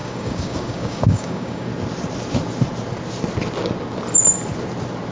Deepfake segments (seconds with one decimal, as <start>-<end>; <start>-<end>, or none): 0.0-1.7